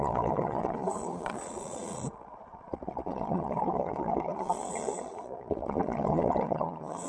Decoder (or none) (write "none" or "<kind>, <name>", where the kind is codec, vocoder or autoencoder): vocoder, Vocos